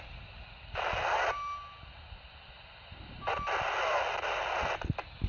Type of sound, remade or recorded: recorded